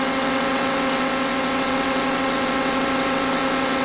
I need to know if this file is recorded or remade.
remade